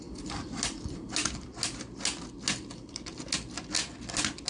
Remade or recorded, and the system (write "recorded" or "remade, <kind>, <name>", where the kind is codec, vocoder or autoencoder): recorded